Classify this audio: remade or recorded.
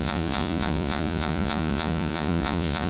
remade